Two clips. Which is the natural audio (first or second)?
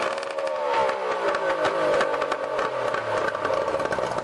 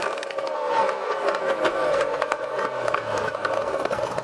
first